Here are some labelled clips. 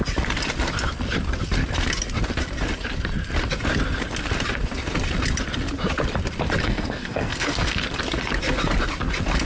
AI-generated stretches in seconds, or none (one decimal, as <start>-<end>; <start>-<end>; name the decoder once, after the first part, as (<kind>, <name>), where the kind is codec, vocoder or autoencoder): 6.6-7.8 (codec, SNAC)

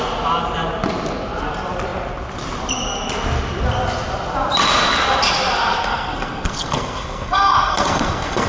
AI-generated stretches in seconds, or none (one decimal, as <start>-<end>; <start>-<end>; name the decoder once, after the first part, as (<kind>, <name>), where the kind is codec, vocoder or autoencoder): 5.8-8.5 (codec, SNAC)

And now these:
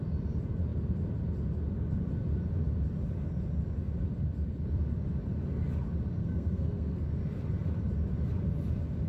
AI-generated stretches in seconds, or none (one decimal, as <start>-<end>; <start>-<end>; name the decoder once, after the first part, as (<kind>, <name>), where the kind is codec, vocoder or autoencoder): 6.2-7.1 (codec, SNAC)